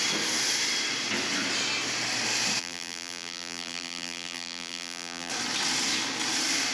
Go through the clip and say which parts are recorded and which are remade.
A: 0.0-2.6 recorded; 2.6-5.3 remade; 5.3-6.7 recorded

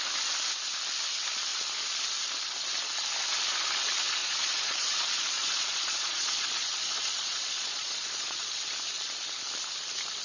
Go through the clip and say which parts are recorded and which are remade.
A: 0.0-4.2 recorded; 4.2-8.6 remade; 8.6-10.2 recorded

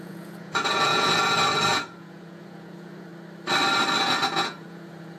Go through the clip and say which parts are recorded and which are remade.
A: 0.0-3.1 remade; 3.1-4.0 recorded; 4.0-5.2 remade

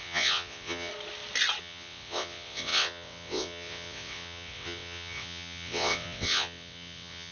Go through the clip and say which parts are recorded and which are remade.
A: 0.0-0.9 remade; 0.9-1.6 recorded; 1.6-7.3 remade

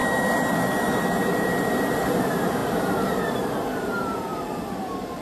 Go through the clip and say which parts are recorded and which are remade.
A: 0.0-0.9 recorded; 0.9-5.2 remade

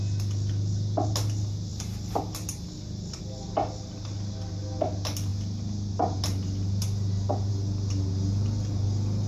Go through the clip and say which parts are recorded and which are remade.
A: 0.0-9.3 recorded

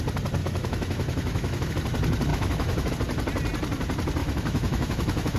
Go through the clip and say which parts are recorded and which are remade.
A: 0.0-0.4 recorded; 0.4-1.7 remade; 1.7-2.3 recorded; 2.3-2.9 remade; 2.9-4.2 recorded; 4.2-5.4 remade

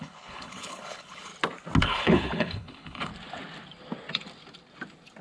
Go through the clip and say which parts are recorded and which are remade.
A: 0.0-1.3 remade; 1.3-1.8 recorded; 1.8-3.1 remade; 3.1-5.2 recorded